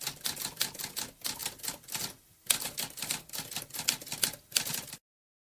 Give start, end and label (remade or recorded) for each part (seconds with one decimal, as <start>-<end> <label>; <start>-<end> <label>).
0.0-5.5 recorded